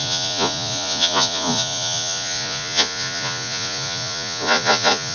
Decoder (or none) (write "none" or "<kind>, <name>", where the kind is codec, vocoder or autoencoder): vocoder, Vocos